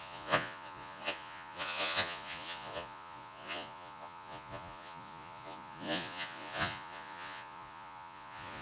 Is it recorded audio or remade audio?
remade